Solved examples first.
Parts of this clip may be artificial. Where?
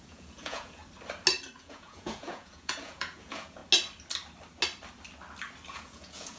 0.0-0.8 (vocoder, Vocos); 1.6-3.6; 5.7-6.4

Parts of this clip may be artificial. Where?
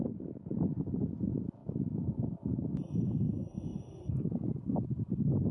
1.6-2.2 (vocoder, BigVGAN v2); 3.7-4.2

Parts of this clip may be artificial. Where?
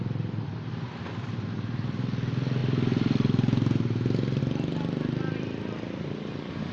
none